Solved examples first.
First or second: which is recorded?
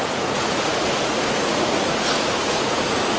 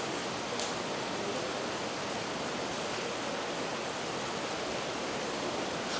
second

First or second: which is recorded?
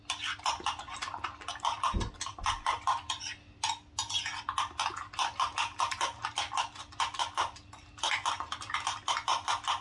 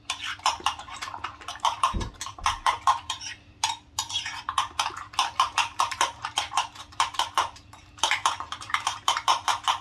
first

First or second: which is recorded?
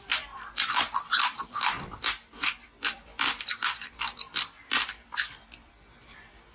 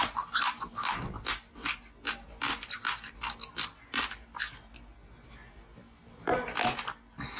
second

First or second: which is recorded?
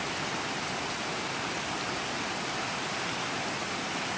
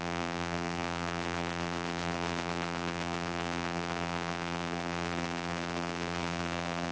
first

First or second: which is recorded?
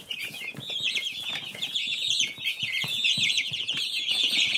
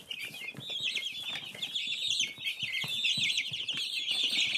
second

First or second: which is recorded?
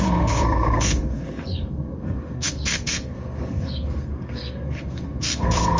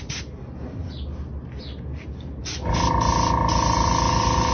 second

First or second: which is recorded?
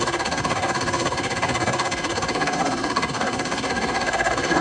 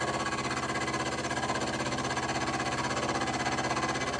second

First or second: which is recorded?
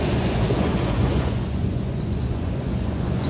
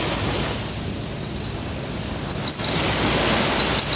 second